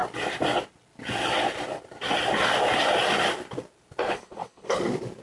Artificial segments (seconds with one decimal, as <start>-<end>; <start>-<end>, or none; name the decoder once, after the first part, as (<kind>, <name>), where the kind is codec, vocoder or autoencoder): 4.0-4.8 (codec, HILCodec)